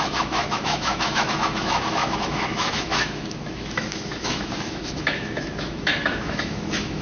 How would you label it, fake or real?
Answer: fake